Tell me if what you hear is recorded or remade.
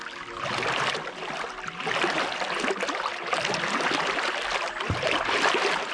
recorded